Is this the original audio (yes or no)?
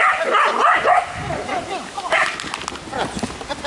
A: yes